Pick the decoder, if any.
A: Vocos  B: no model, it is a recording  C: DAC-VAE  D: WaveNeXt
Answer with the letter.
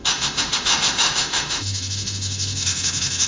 C